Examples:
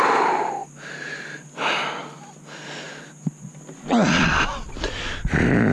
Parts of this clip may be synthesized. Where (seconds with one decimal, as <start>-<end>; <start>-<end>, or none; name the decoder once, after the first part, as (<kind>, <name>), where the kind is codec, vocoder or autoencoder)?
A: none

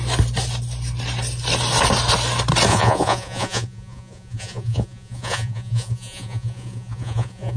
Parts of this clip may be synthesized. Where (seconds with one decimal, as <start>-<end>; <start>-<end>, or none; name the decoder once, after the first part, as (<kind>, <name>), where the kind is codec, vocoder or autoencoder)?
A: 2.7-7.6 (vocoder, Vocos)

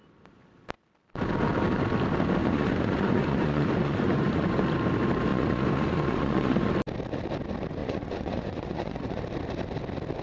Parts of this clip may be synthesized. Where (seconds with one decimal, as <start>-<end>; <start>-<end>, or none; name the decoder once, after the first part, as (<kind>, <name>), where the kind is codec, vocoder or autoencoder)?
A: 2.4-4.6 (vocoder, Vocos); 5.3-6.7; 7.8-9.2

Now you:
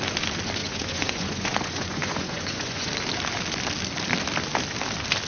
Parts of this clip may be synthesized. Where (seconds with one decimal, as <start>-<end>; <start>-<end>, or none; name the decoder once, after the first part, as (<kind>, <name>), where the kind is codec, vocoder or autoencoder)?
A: 0.6-2.9 (vocoder, Vocos)